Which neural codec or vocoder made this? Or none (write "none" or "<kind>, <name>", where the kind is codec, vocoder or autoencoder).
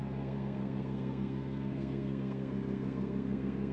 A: codec, SNAC